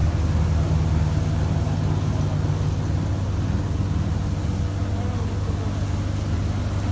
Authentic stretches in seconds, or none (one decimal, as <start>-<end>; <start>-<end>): 0.0-6.9